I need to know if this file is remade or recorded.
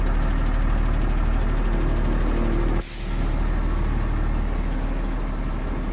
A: recorded